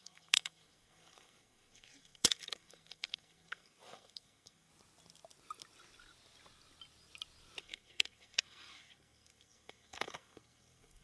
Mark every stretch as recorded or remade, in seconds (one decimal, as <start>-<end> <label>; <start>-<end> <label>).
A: 0.0-4.7 remade; 4.7-7.6 recorded; 7.6-11.0 remade